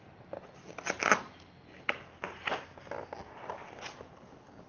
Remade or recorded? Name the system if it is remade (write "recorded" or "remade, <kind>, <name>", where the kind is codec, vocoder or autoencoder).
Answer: recorded